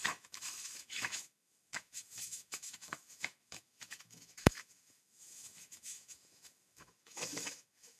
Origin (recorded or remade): remade